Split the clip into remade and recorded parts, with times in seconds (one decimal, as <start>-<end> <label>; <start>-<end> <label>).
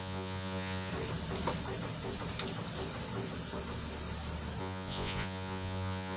0.0-0.9 remade; 0.9-4.6 recorded; 4.6-6.2 remade